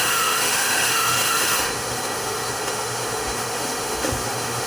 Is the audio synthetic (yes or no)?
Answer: yes